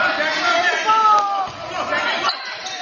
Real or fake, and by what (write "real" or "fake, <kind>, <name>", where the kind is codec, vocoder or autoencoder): real